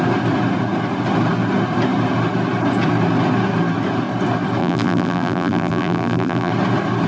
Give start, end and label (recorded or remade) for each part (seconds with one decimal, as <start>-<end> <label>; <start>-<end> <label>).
0.0-4.6 recorded; 4.6-6.5 remade; 6.5-7.1 recorded